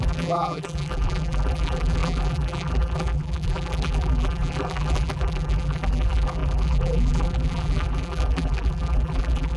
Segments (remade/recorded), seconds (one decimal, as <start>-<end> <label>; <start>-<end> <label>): 0.0-9.6 remade